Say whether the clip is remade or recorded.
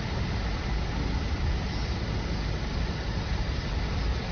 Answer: recorded